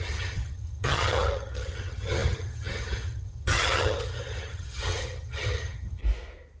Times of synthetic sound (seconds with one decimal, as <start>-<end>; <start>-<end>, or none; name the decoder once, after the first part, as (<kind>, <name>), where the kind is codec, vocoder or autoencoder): 0.0-6.0 (vocoder, HiFi-GAN)